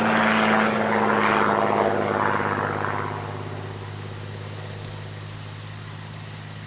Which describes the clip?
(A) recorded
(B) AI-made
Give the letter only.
A